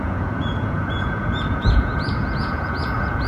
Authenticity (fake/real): fake